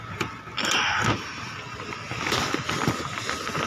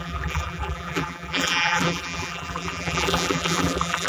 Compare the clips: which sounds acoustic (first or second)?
first